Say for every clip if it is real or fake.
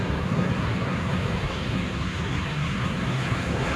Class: fake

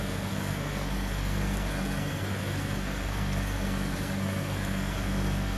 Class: fake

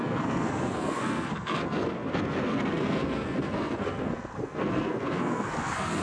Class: fake